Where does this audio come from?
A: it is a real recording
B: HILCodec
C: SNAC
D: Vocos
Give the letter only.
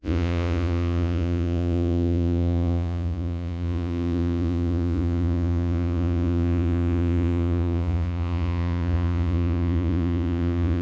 D